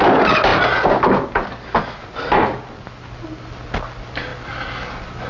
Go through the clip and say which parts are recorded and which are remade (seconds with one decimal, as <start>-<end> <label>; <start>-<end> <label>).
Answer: 0.0-5.3 recorded